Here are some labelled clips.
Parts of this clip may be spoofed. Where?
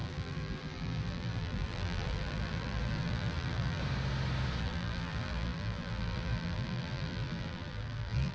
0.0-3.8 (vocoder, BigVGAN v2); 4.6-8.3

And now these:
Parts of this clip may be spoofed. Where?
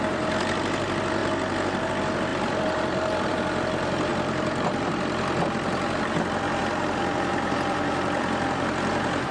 2.3-3.3 (vocoder, BigVGAN v2); 4.1-6.0; 6.6-8.9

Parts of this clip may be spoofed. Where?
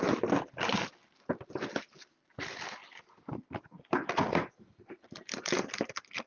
0.0-0.7 (vocoder, BigVGAN v2); 1.3-2.8; 5.8-6.3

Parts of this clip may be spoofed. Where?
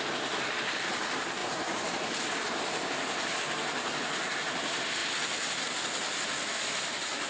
1.4-3.4 (vocoder, BigVGAN v2)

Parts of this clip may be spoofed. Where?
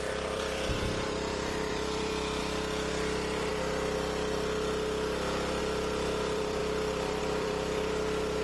0.0-2.4 (vocoder, BigVGAN v2); 2.9-3.5; 5.6-8.4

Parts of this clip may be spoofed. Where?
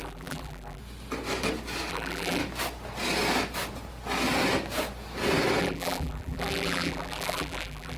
0.0-0.8 (vocoder, BigVGAN v2); 1.9-2.4; 5.6-8.0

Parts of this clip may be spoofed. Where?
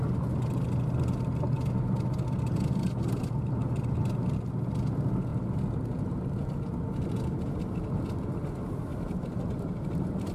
8.9-10.3 (vocoder, BigVGAN v2)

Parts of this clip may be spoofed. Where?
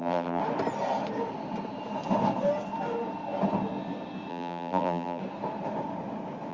0.0-0.4 (vocoder, BigVGAN v2); 4.3-5.2